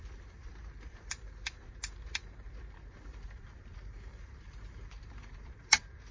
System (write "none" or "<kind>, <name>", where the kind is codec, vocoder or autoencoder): vocoder, BigVGAN v2